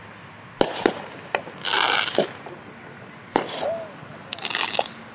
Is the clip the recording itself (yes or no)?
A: yes